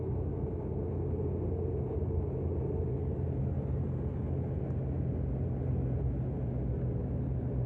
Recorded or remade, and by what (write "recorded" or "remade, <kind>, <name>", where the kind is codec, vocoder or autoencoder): recorded